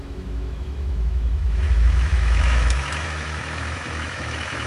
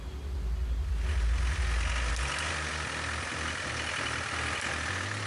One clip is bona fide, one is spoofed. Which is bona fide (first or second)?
second